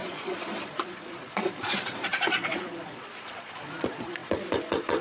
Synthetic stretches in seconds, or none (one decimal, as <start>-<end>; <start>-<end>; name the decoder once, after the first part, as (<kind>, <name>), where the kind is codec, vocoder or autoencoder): 0.0-5.0 (vocoder, Vocos)